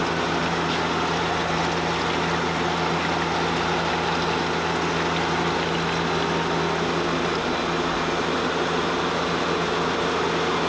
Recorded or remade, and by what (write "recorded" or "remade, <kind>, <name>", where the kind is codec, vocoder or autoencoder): recorded